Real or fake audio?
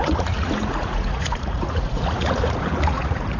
fake